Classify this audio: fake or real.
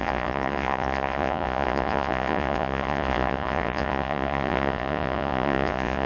fake